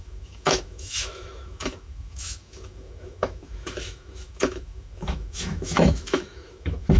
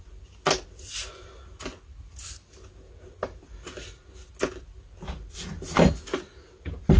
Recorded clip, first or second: second